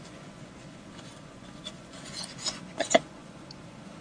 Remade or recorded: remade